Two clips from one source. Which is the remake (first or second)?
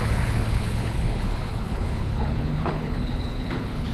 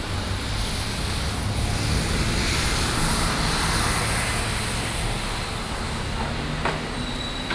first